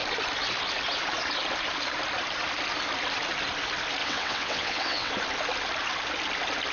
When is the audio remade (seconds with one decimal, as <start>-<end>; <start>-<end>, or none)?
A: 4.0-5.1